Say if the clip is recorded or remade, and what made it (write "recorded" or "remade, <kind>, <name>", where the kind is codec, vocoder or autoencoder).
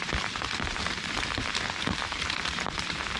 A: remade, vocoder, BigVGAN v2